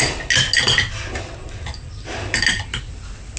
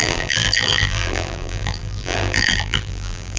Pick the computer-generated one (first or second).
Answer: second